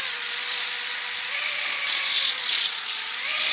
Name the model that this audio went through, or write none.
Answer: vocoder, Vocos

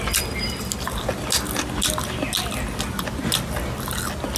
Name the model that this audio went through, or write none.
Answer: none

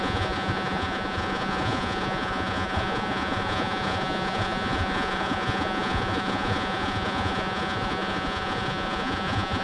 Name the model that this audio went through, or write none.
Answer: vocoder, Vocos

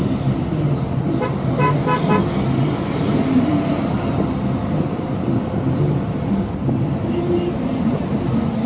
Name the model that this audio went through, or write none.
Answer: none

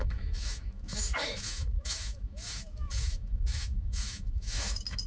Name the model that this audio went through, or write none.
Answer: autoencoder, DAC-VAE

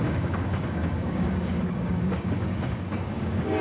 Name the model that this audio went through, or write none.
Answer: codec, DAC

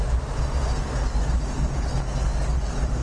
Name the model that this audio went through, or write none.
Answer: none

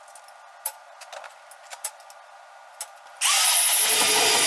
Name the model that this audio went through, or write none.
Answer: none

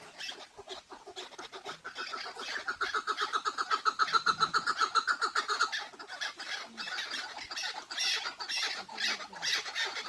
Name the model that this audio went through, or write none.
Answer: none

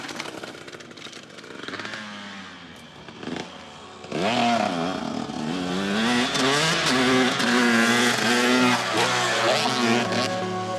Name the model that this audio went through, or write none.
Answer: none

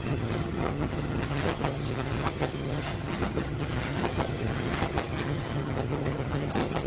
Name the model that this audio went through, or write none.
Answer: vocoder, HiFi-GAN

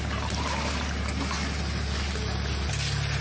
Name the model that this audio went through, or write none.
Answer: none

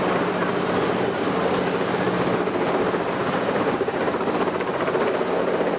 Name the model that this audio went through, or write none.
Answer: none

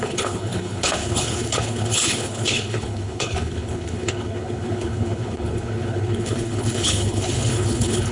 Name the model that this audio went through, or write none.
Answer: codec, HILCodec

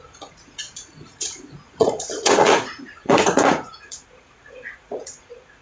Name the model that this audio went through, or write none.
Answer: vocoder, Vocos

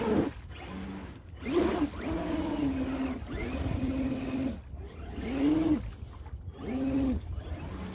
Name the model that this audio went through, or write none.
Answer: none